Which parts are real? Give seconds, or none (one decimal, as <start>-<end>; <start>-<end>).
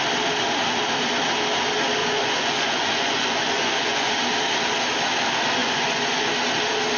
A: 0.0-2.0; 4.1-5.6; 6.3-7.0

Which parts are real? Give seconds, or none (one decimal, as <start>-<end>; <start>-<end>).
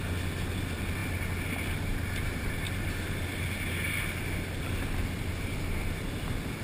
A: 0.0-6.6